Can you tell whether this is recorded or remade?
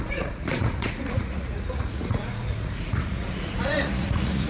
remade